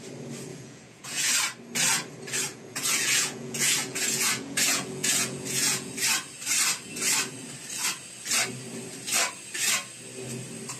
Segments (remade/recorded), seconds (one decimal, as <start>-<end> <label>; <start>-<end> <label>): 0.0-0.5 recorded; 0.5-1.3 remade; 1.3-2.5 recorded; 2.5-5.9 remade; 5.9-10.8 recorded